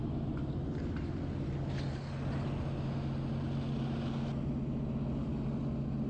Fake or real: real